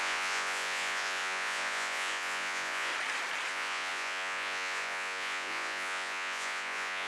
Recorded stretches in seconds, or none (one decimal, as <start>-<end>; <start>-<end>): 2.9-3.5